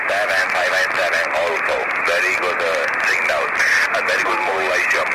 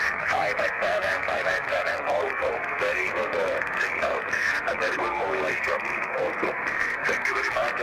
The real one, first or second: first